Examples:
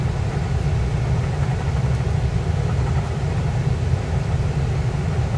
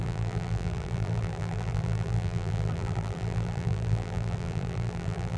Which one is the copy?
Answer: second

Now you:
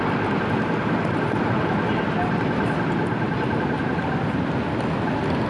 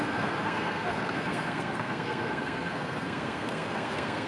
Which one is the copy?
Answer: second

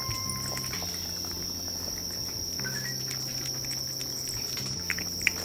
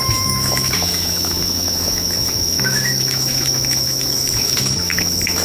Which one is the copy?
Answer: second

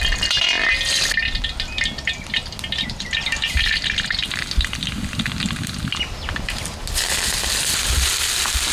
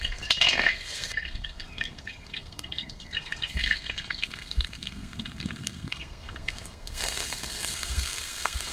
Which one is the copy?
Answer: second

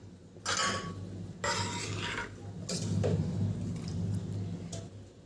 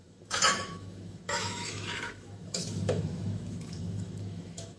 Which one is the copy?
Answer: second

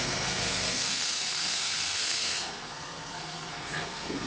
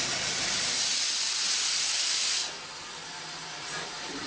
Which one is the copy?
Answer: first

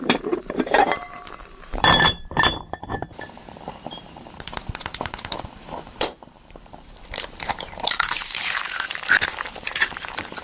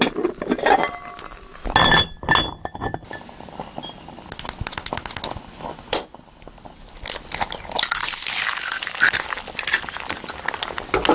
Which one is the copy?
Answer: first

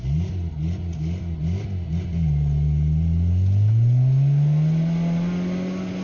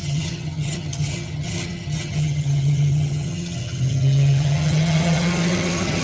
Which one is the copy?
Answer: second